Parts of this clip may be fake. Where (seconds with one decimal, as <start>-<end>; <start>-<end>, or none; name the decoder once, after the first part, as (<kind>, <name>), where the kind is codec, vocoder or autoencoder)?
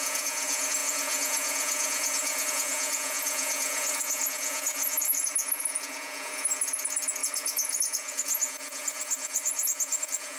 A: 0.0-10.4 (vocoder, Vocos)